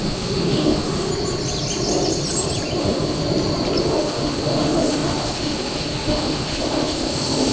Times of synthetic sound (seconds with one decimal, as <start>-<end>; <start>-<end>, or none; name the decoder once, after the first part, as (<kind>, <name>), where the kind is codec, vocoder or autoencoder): 0.0-1.1 (autoencoder, DAC-VAE); 2.8-3.2; 3.8-7.5